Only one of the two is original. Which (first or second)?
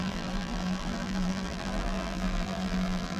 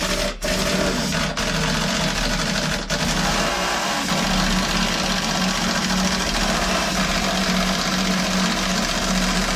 second